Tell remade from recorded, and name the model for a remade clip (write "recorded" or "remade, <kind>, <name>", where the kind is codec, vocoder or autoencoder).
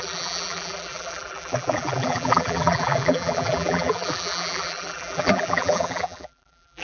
remade, vocoder, BigVGAN v2